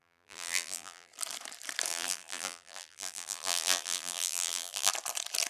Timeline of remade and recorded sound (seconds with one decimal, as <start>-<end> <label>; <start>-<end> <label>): 0.0-1.1 remade; 1.1-1.9 recorded; 1.9-4.9 remade; 4.9-5.5 recorded